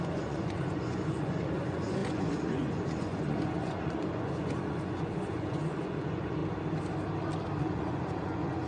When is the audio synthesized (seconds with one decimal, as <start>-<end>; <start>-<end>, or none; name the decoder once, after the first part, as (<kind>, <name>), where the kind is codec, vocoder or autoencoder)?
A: 0.0-6.4 (vocoder, Vocos); 7.6-8.7